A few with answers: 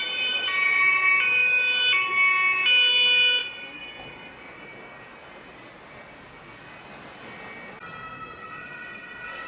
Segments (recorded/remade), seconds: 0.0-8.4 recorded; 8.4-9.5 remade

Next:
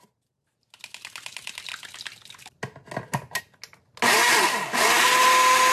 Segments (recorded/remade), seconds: 0.0-5.7 recorded

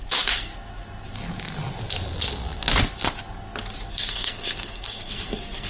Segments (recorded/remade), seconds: 0.0-0.5 remade; 0.5-3.9 recorded; 3.9-5.7 remade

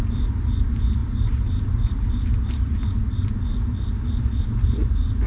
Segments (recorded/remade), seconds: 0.0-5.3 recorded

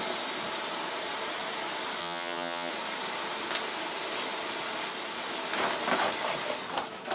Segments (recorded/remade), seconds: 0.0-2.0 recorded; 2.0-2.7 remade; 2.7-7.1 recorded

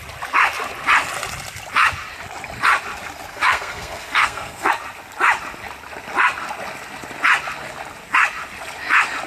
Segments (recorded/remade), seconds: 0.0-3.3 recorded; 3.3-4.7 remade; 4.7-9.3 recorded

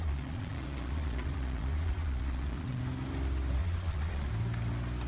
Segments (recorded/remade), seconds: 0.0-2.8 remade; 2.8-3.6 recorded; 3.6-4.3 remade; 4.3-5.1 recorded

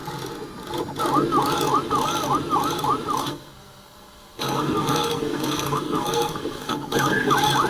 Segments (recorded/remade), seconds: 0.0-3.2 recorded; 3.2-7.3 remade; 7.3-7.7 recorded